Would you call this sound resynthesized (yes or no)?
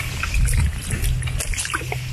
no